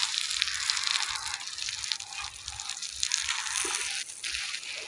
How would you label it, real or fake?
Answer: real